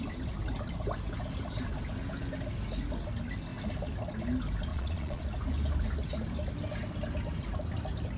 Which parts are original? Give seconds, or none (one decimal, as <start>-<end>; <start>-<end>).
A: 0.0-4.7; 5.2-8.2